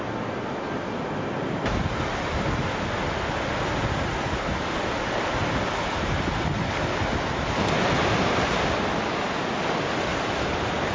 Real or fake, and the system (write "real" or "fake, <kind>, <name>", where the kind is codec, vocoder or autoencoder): real